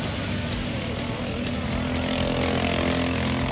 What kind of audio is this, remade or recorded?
recorded